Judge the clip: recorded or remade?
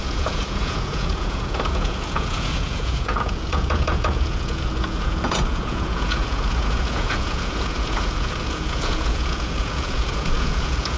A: remade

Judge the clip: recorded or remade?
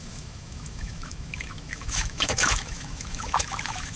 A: remade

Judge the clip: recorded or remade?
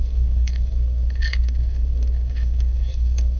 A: remade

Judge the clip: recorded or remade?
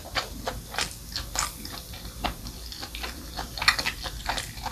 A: recorded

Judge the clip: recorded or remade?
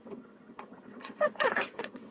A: remade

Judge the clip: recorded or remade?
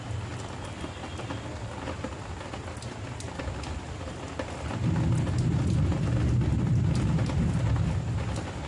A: recorded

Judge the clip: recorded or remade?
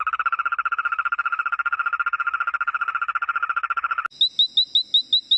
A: recorded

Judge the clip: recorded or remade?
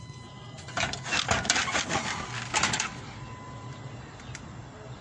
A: recorded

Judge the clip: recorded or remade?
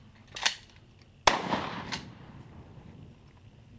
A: recorded